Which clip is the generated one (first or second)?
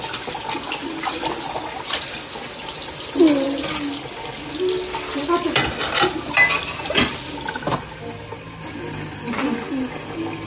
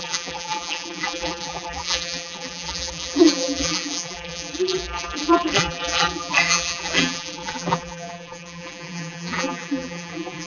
second